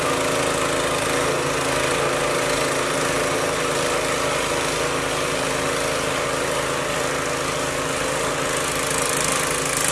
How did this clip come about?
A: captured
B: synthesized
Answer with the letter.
A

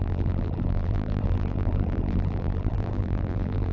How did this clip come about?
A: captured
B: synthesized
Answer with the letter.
B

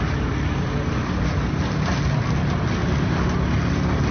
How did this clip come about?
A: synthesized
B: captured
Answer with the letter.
B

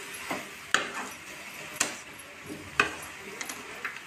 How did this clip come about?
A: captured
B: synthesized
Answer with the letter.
A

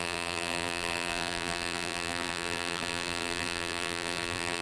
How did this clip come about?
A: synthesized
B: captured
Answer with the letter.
A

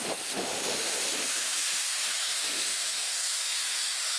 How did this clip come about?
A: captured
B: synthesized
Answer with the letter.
B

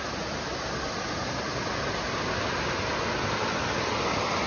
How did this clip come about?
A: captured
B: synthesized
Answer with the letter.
A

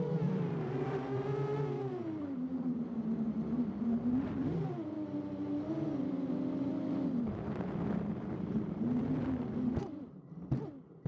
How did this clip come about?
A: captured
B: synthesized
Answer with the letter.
B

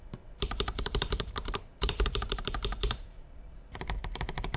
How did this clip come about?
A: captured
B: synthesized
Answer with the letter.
B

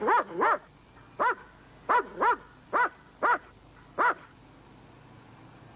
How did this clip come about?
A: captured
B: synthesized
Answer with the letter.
A